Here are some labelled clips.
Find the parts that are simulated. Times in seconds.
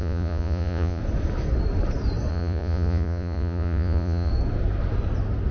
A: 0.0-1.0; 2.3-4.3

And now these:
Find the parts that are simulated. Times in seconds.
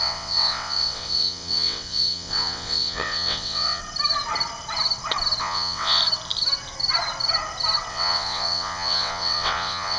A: 0.0-3.8; 5.4-6.0; 7.9-10.0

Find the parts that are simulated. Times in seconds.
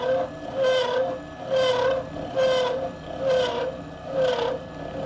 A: none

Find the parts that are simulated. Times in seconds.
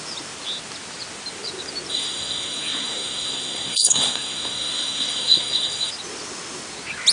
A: 1.9-5.9